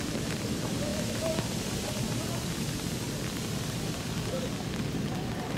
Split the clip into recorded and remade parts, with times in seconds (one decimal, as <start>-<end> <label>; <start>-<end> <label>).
0.0-5.6 recorded